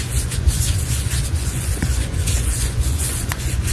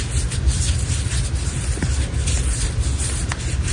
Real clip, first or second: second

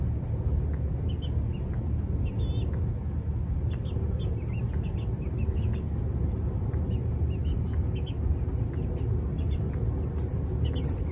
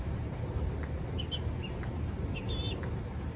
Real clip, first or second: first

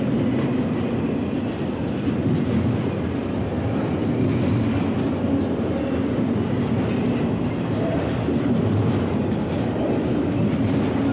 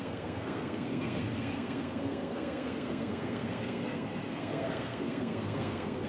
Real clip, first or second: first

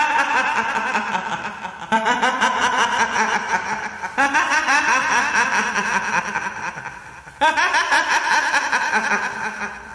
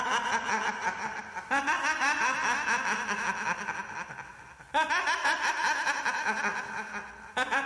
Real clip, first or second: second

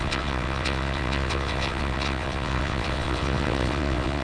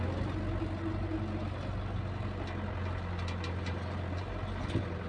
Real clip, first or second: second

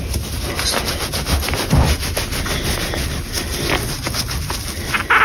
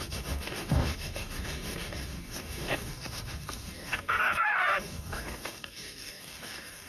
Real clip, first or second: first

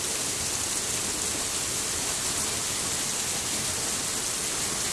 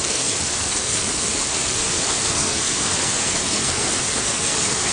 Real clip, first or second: first